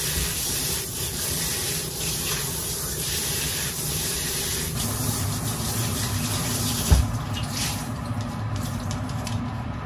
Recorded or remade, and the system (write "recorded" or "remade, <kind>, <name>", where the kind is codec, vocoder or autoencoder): remade, vocoder, BigVGAN v2